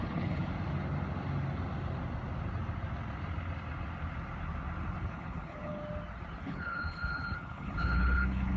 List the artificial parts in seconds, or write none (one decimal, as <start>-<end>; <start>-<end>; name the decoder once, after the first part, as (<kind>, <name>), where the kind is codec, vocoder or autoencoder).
0.0-0.5 (codec, HILCodec); 5.0-5.8; 6.4-8.6